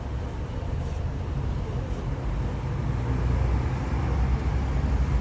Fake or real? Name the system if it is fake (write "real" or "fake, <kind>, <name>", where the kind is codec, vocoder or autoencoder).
real